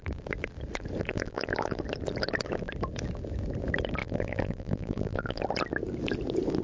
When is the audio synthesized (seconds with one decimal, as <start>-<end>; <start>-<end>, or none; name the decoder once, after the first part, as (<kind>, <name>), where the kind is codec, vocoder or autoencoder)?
1.1-1.8 (vocoder, BigVGAN v2); 4.0-5.4